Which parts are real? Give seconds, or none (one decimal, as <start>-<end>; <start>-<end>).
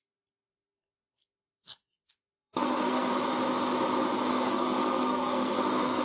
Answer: 0.0-0.5; 3.1-4.3